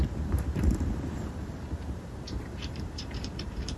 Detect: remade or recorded remade